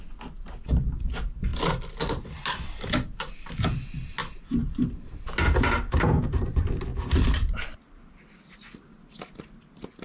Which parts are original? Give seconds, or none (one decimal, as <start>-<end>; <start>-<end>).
0.0-4.2; 4.8-6.9; 8.1-10.0